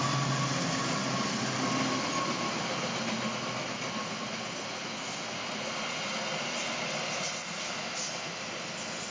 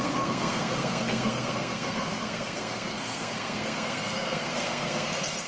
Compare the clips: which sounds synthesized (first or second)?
second